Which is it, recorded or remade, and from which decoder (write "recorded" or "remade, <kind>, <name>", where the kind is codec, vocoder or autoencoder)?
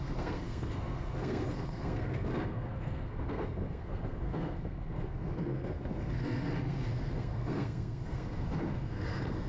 remade, codec, SNAC